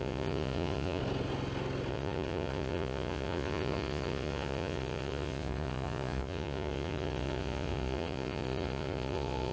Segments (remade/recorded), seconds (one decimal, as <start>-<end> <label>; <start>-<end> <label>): 0.0-1.0 remade; 1.0-1.9 recorded; 1.9-9.5 remade